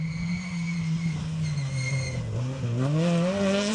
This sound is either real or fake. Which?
real